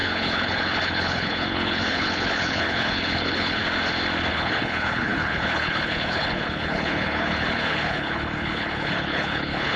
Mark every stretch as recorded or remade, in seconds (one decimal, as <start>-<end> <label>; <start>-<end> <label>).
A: 0.0-3.6 remade; 3.6-4.3 recorded; 4.3-9.8 remade